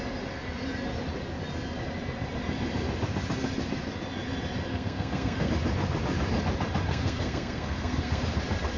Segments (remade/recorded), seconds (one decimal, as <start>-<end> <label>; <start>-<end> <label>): 0.0-4.7 recorded; 4.7-5.5 remade; 5.5-6.9 recorded; 6.9-8.2 remade; 8.2-8.8 recorded